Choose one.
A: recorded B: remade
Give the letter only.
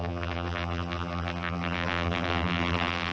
B